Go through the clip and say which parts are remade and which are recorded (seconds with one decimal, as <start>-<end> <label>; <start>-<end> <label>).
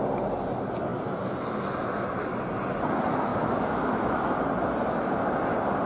0.0-3.3 recorded; 3.3-4.4 remade; 4.4-5.9 recorded